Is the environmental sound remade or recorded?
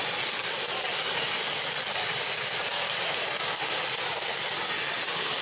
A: recorded